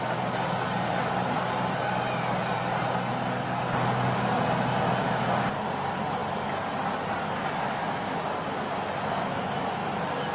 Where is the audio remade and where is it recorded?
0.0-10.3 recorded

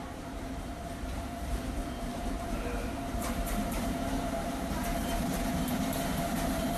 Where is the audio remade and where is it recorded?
0.0-5.5 remade; 5.5-6.3 recorded; 6.3-6.8 remade

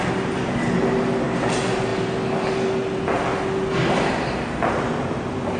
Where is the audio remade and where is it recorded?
0.0-5.6 recorded